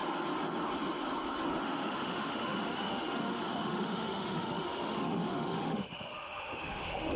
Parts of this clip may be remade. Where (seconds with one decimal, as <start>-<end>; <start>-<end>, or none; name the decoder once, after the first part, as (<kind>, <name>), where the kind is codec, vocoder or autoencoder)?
1.6-7.2 (autoencoder, DAC-VAE)